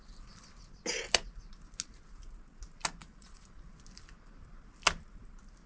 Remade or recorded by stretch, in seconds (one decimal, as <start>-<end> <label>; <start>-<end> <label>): 0.0-3.0 recorded; 3.0-3.7 remade; 3.7-5.7 recorded